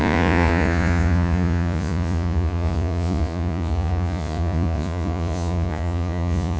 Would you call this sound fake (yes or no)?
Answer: yes